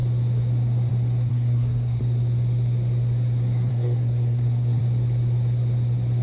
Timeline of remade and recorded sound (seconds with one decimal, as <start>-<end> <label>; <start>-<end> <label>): 0.0-1.3 recorded; 1.3-2.0 remade; 2.0-3.7 recorded; 3.7-4.8 remade; 4.8-6.2 recorded

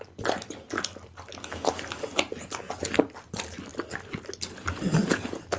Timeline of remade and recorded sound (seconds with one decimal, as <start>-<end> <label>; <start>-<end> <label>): 0.0-5.6 recorded

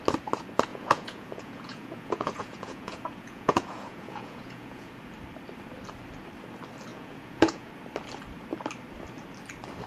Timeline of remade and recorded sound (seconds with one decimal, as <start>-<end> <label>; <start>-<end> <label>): 0.0-0.7 recorded; 0.7-4.9 remade; 4.9-6.9 recorded; 6.9-7.7 remade; 7.7-9.9 recorded

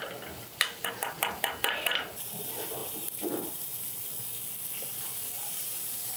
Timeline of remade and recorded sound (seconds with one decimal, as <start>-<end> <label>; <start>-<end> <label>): 0.0-2.8 recorded; 2.8-3.8 remade; 3.8-5.5 recorded; 5.5-6.2 remade

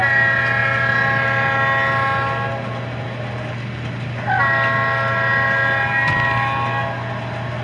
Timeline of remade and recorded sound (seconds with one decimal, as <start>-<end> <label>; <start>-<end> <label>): 0.0-7.6 recorded

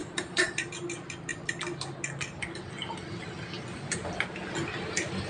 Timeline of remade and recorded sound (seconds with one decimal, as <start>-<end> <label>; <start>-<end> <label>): 0.0-0.6 remade; 0.6-5.3 recorded

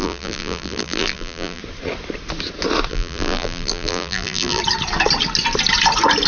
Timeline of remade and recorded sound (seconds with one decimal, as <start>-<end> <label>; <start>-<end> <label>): 0.0-1.6 remade; 1.6-2.9 recorded; 2.9-4.6 remade; 4.6-6.3 recorded